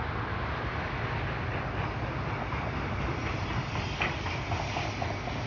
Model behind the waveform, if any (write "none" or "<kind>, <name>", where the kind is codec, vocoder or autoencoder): none